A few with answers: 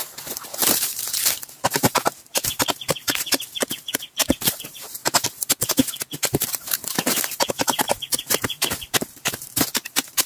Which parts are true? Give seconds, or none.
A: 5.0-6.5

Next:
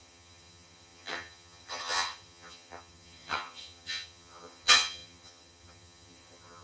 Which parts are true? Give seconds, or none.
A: none

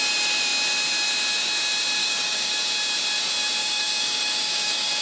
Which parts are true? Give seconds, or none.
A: 0.0-2.0; 2.5-3.6

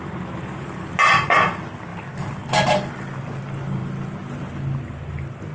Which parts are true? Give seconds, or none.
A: 0.0-5.5

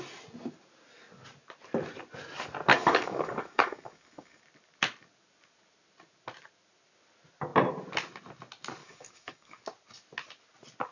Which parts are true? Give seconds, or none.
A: 0.0-2.7; 4.4-8.8; 9.6-10.9

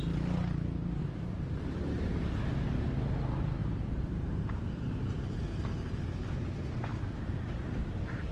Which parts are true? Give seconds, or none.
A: 0.0-1.0; 2.2-3.6; 5.0-6.9

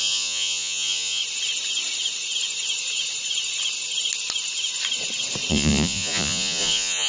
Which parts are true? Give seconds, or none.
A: 1.2-5.5

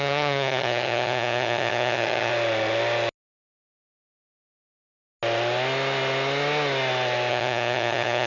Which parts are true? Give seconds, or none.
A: 2.3-7.3